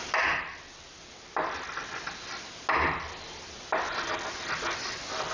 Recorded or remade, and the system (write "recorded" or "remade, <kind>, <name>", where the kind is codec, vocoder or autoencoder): recorded